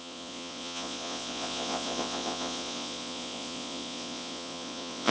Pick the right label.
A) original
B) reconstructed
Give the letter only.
B